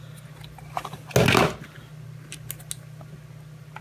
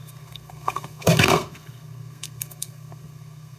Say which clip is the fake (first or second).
second